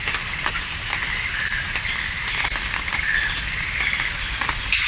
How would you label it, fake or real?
real